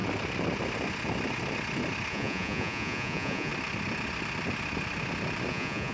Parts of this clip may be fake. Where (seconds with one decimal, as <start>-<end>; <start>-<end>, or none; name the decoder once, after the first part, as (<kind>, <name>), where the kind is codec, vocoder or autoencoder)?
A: 2.1-3.5 (vocoder, Vocos); 5.5-5.9